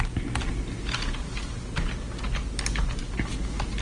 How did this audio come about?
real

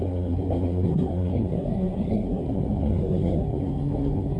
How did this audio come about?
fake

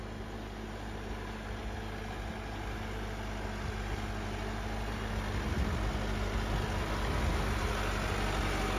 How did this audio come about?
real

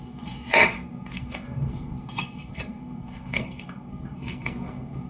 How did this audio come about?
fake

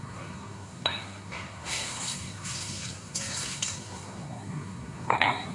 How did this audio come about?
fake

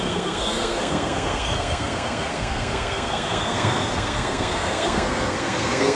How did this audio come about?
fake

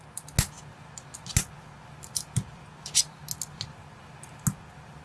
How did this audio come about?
real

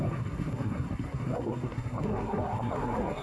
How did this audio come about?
fake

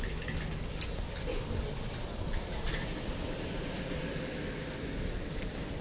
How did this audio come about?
real